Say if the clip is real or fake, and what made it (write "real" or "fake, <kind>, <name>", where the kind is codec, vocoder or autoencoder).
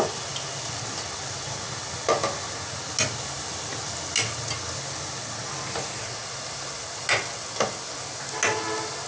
real